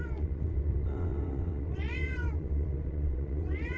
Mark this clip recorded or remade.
remade